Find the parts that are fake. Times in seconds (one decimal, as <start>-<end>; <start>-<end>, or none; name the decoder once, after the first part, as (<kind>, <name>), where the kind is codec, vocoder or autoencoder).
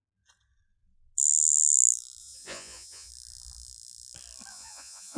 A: 2.2-3.1 (vocoder, Vocos); 4.5-5.2